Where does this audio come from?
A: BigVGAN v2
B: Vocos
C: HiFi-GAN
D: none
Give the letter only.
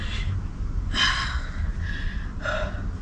D